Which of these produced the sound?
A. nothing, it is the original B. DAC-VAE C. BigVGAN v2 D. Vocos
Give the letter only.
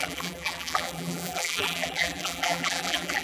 C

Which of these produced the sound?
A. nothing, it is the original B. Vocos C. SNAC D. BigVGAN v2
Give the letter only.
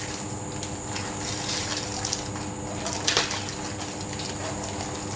A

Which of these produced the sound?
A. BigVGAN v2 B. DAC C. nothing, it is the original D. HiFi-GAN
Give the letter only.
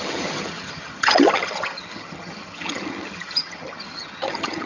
D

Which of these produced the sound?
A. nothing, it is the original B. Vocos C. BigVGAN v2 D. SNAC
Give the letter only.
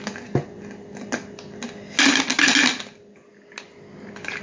A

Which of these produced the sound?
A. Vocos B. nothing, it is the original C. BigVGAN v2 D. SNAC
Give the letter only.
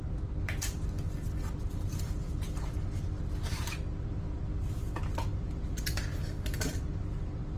C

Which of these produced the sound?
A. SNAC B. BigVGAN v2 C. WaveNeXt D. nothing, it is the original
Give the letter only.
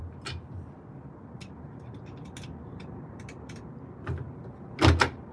D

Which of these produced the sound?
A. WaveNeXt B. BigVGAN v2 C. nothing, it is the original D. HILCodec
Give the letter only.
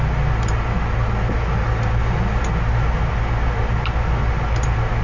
C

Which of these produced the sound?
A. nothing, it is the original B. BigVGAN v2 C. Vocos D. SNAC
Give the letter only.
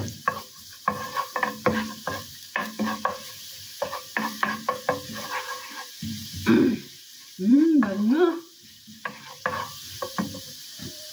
B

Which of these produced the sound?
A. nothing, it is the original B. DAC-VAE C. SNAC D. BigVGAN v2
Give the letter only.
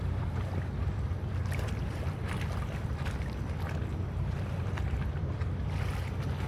D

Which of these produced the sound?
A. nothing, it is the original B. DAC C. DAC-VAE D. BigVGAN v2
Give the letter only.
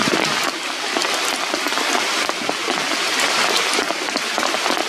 A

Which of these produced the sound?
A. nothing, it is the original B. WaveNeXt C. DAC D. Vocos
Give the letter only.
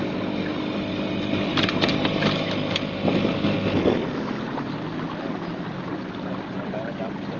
A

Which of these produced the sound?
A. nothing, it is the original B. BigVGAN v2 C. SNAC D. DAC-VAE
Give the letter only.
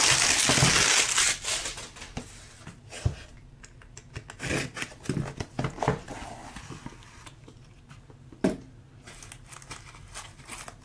A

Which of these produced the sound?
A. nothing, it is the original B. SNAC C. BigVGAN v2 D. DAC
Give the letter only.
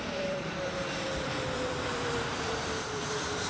C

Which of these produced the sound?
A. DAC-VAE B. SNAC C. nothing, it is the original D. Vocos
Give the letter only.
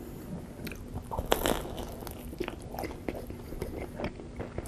C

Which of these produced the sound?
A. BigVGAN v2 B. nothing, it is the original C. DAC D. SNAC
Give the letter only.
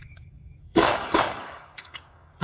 C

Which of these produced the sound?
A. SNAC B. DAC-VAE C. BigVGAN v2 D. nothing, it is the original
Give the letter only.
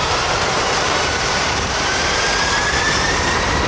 C